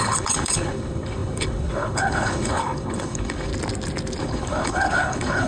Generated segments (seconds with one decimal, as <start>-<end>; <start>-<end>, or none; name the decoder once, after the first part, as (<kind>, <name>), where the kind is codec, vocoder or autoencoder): 0.0-3.5 (codec, HILCodec); 4.2-5.5